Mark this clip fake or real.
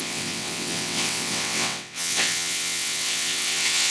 fake